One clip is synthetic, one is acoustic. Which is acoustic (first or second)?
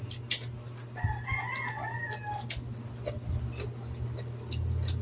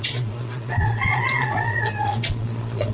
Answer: first